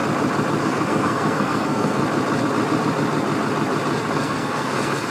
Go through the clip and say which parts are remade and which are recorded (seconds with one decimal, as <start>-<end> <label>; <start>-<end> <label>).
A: 0.0-0.6 recorded; 0.6-2.0 remade; 2.0-4.1 recorded; 4.1-5.1 remade

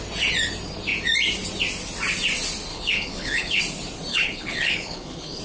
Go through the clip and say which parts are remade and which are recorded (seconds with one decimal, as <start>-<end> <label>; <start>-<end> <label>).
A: 0.0-2.7 recorded; 2.7-3.6 remade; 3.6-4.1 recorded; 4.1-5.4 remade

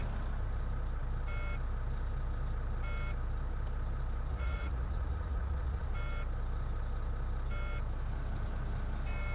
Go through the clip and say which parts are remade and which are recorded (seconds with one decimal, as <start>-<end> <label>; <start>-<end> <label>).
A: 0.0-4.3 recorded; 4.3-5.9 remade; 5.9-9.3 recorded

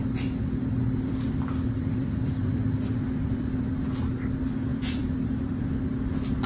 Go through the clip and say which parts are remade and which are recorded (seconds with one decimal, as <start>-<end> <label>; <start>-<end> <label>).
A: 0.0-3.6 remade; 3.6-4.7 recorded; 4.7-5.7 remade; 5.7-6.5 recorded

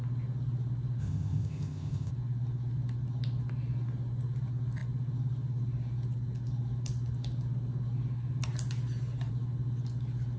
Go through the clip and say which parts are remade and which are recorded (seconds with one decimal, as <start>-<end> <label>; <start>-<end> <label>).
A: 0.0-1.0 recorded; 1.0-2.1 remade; 2.1-10.4 recorded